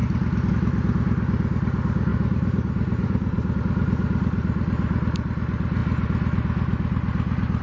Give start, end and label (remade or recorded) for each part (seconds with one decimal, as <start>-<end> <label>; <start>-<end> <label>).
0.0-2.1 recorded; 2.1-3.6 remade; 3.6-7.6 recorded

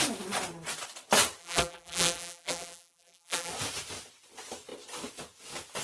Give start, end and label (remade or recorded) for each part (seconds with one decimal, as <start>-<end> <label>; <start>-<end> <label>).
0.0-1.4 recorded; 1.4-3.5 remade; 3.5-5.8 recorded

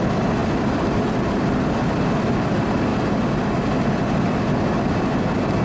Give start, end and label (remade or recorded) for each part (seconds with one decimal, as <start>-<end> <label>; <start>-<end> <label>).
0.0-2.9 remade; 2.9-4.0 recorded; 4.0-5.6 remade

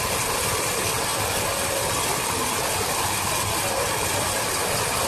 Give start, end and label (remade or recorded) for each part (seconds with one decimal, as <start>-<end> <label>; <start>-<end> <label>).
0.0-5.1 recorded

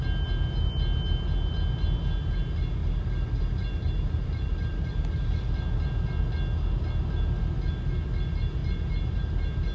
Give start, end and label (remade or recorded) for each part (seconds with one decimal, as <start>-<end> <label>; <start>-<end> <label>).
0.0-2.8 recorded; 2.8-5.5 remade; 5.5-9.7 recorded

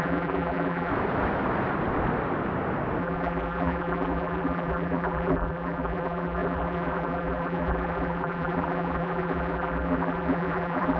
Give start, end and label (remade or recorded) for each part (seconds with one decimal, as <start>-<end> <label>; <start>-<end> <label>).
0.0-0.9 remade; 0.9-3.0 recorded; 3.0-11.0 remade

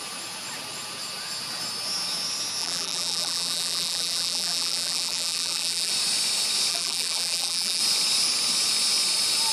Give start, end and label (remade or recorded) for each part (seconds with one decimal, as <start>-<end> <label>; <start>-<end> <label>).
0.0-2.6 recorded; 2.6-5.9 remade; 5.9-6.7 recorded; 6.7-7.8 remade; 7.8-9.5 recorded

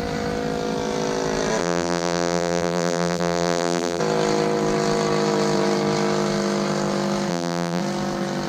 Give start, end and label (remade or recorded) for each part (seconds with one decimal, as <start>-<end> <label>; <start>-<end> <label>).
0.0-1.6 recorded; 1.6-4.0 remade; 4.0-7.3 recorded; 7.3-7.8 remade; 7.8-8.5 recorded